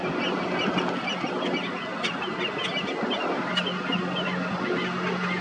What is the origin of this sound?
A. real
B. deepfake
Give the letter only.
A